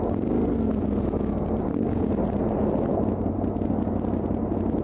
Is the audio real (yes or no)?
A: yes